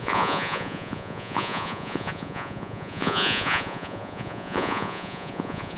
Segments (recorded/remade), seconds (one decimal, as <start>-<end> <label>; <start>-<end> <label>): 0.0-5.8 remade